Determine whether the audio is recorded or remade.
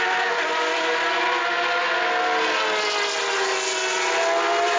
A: recorded